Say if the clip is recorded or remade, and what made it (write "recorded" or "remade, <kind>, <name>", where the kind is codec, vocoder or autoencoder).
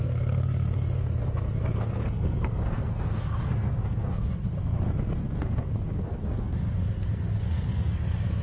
remade, codec, SNAC